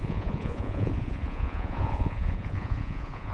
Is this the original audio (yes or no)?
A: no